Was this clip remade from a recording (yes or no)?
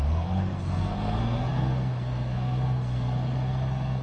yes